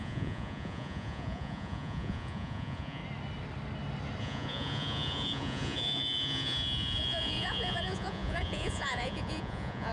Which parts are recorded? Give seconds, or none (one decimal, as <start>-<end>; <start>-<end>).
3.0-4.2